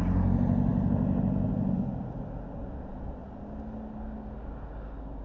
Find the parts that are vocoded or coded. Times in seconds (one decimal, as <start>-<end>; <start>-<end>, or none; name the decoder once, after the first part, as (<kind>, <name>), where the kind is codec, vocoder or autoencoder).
none